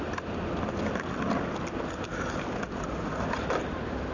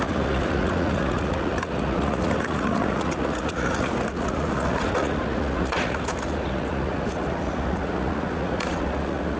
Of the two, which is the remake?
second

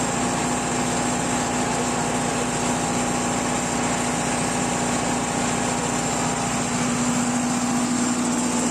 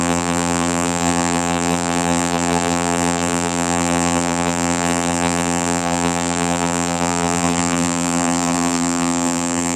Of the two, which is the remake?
second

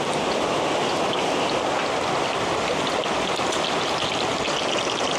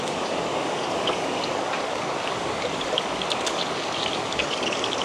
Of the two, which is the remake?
second